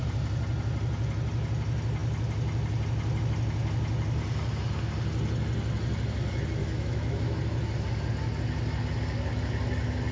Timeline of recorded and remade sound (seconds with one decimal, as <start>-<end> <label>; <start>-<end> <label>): 0.0-6.6 recorded; 6.6-7.4 remade; 7.4-10.1 recorded